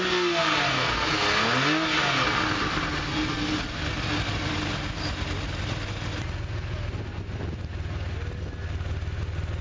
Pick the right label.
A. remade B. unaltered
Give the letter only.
B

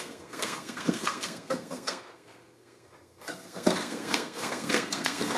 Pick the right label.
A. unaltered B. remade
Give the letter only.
B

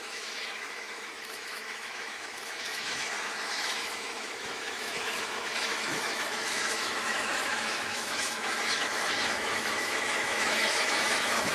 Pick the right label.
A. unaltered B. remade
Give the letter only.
B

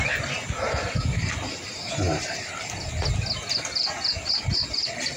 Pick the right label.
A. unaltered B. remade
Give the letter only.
A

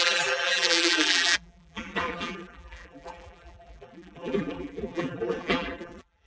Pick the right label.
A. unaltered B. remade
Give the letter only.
B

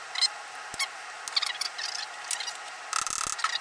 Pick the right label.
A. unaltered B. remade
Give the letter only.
A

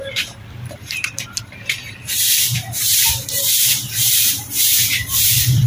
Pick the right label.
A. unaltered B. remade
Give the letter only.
B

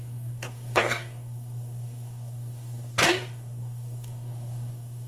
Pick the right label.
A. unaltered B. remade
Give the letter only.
B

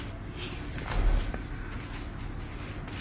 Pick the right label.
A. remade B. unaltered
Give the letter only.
B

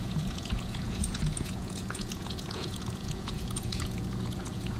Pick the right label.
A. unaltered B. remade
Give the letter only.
B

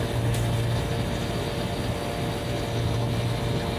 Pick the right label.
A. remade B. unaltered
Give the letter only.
B